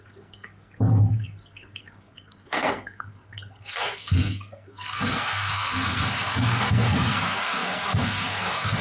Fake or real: fake